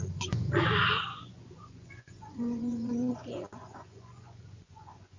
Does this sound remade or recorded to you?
remade